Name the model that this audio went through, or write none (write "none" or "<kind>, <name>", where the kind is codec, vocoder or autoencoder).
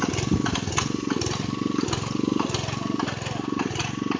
none